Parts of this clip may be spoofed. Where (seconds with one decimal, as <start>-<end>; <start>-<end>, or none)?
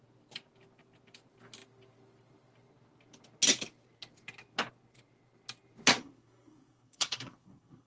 6.0-7.9